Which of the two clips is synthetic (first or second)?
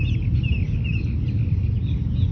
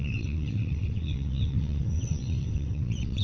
second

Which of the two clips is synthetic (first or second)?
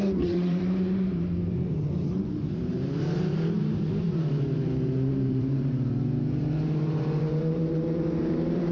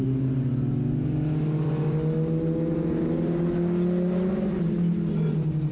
first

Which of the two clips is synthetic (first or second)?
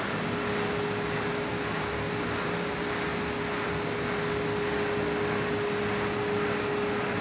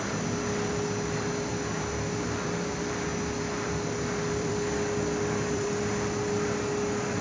second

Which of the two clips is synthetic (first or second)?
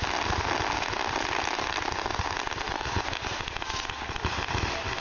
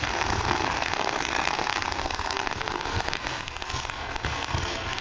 second